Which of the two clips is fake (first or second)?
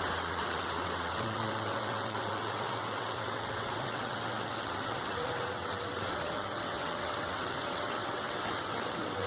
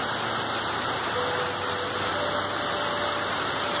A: first